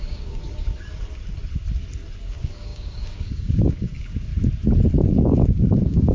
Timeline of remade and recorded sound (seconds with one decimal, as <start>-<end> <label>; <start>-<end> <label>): 0.0-0.4 remade; 0.4-2.2 recorded; 2.2-4.3 remade; 4.3-5.0 recorded; 5.0-6.1 remade